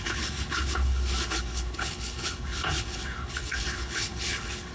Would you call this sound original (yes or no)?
no